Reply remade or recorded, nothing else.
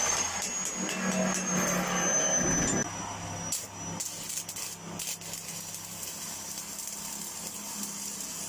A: recorded